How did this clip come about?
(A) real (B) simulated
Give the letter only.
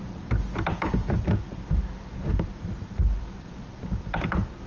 B